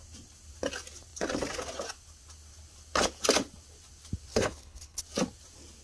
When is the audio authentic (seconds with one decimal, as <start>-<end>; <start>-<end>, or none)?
0.0-4.3; 5.0-5.8